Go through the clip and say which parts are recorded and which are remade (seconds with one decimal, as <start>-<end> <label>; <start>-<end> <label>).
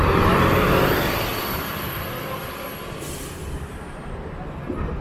0.0-1.3 recorded; 1.3-2.0 remade; 2.0-3.7 recorded; 3.7-4.4 remade; 4.4-5.0 recorded